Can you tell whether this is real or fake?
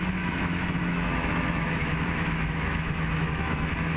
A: fake